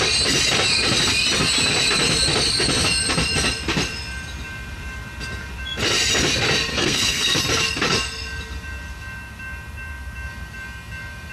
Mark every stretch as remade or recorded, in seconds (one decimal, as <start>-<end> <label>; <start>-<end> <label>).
0.0-6.7 recorded; 6.7-7.4 remade; 7.4-11.3 recorded